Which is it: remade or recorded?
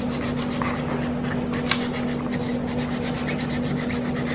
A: recorded